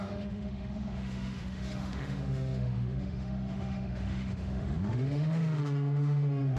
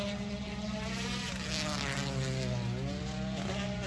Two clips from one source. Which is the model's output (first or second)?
first